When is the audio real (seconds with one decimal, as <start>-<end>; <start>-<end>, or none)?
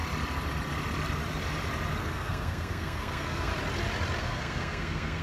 0.0-2.0; 3.5-4.2